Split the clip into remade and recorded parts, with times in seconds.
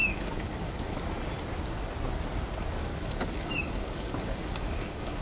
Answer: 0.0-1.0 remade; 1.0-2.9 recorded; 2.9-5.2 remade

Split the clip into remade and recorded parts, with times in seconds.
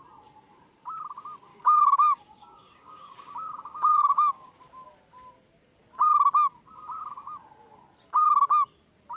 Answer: 0.0-1.5 recorded; 1.5-4.5 remade; 4.5-9.2 recorded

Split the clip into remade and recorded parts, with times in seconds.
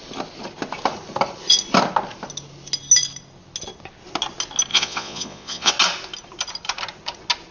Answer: 0.0-4.7 recorded; 4.7-5.7 remade; 5.7-7.5 recorded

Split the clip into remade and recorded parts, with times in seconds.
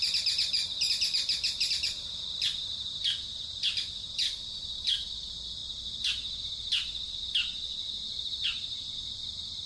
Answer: 0.0-9.7 recorded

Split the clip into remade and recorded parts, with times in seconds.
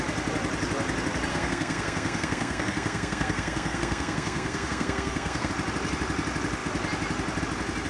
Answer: 0.0-1.3 recorded; 1.3-5.5 remade; 5.5-7.9 recorded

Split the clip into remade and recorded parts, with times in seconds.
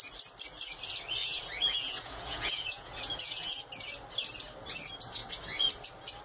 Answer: 0.0-1.2 recorded; 1.2-3.6 remade; 3.6-6.2 recorded